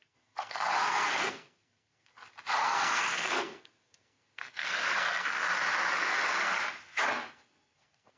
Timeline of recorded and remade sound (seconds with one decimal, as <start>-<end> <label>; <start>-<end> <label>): 0.0-2.1 remade; 2.1-2.6 recorded; 2.6-5.5 remade; 5.5-6.0 recorded; 6.0-6.6 remade; 6.6-7.3 recorded; 7.3-8.2 remade